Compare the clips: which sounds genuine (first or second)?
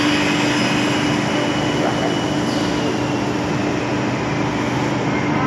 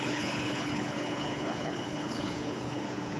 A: first